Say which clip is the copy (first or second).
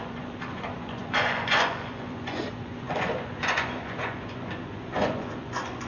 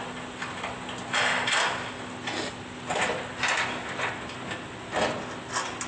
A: first